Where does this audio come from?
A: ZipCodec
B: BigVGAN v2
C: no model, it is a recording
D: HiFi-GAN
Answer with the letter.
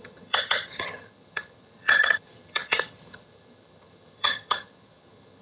D